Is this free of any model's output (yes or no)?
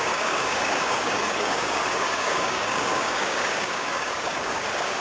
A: no